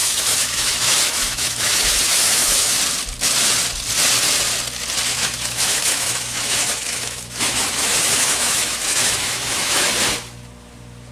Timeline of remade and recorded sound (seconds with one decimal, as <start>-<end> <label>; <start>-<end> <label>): 0.0-2.8 remade; 2.8-5.1 recorded; 5.1-9.9 remade; 9.9-11.1 recorded